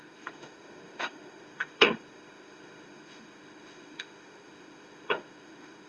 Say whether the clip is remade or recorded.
remade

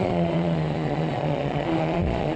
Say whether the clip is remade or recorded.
remade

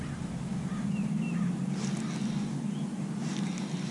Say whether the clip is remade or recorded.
recorded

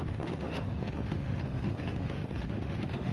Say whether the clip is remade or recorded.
remade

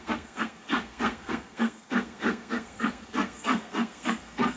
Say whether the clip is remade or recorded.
remade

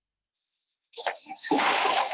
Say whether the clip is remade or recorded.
remade